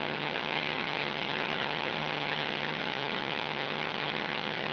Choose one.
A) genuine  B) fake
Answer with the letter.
B